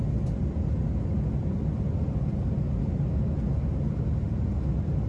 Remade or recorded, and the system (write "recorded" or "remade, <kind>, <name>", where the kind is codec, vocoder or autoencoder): recorded